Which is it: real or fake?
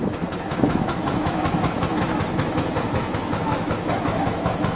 fake